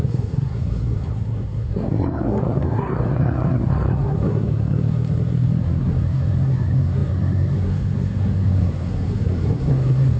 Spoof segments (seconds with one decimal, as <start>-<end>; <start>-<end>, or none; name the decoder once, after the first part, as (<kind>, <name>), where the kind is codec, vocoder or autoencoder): 0.0-10.2 (codec, SNAC)